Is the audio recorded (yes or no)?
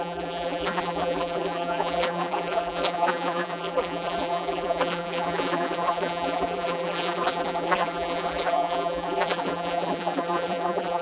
no